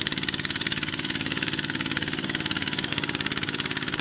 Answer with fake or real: fake